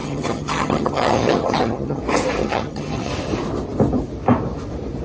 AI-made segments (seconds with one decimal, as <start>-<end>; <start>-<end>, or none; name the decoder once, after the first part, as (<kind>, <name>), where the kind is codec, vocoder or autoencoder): 0.0-2.0 (vocoder, HiFi-GAN); 2.4-3.1